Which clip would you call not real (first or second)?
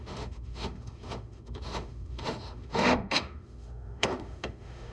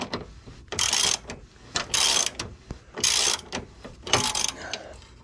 first